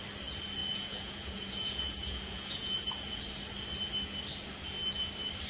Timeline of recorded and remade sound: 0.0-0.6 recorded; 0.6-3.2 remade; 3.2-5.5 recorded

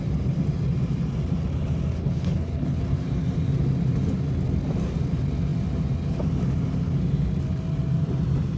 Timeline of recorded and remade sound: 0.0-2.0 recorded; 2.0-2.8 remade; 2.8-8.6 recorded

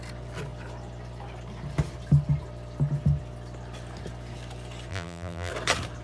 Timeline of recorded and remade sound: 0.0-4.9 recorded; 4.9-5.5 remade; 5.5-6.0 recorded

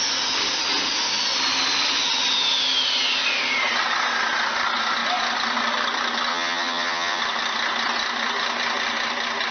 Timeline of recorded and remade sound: 0.0-6.3 recorded; 6.3-7.2 remade; 7.2-9.5 recorded